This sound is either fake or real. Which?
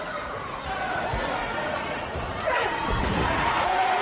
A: fake